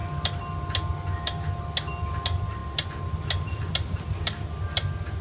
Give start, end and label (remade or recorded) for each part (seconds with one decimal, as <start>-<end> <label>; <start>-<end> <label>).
0.0-5.2 recorded